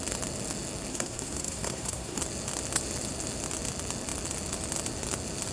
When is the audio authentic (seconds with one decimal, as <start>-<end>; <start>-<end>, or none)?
0.0-0.9; 2.2-5.5